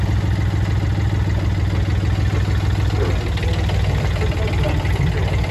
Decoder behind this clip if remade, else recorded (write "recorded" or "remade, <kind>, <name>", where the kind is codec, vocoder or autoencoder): recorded